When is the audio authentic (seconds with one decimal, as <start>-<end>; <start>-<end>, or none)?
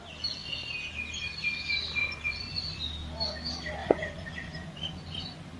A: 0.0-2.0; 2.8-3.8